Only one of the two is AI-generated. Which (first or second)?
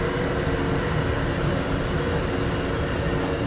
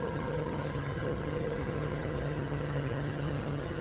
second